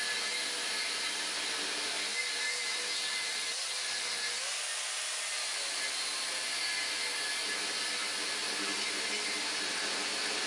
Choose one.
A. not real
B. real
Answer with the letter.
B